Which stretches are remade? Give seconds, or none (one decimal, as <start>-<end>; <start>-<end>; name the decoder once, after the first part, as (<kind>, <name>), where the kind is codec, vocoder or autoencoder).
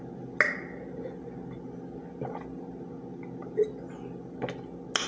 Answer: none